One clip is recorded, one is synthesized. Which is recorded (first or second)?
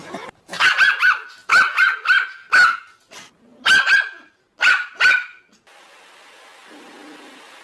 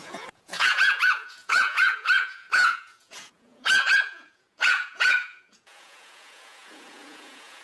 first